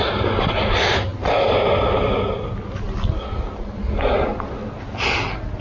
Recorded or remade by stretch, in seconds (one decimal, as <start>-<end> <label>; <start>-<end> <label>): 0.0-5.6 recorded

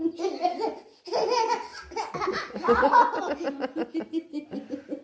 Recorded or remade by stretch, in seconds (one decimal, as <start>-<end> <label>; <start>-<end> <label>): 0.0-5.0 recorded

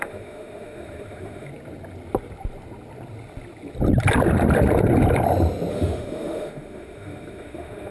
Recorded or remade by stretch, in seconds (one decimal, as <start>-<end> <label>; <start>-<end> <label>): 0.0-1.5 remade; 1.5-5.7 recorded; 5.7-7.9 remade

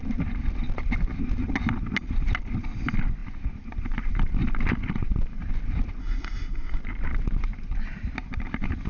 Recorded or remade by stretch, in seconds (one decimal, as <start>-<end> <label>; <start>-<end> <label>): 0.0-6.0 recorded; 6.0-6.8 remade; 6.8-8.9 recorded

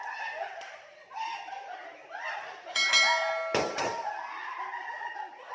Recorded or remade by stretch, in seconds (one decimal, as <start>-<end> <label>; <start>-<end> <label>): 0.0-5.5 recorded

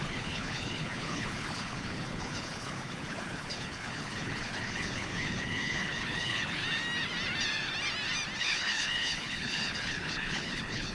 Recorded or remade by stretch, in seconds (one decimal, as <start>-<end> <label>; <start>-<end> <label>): 0.0-6.6 remade; 6.6-8.4 recorded; 8.4-10.9 remade

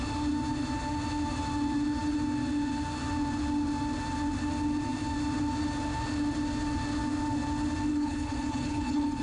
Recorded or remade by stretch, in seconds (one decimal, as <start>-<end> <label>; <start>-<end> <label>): 0.0-7.9 recorded; 7.9-9.2 remade

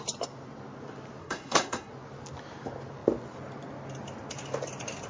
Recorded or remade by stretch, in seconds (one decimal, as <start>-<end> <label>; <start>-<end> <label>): 0.0-1.2 recorded; 1.2-1.9 remade; 1.9-5.1 recorded